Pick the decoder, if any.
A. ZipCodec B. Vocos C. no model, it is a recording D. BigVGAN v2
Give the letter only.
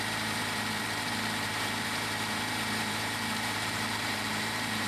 D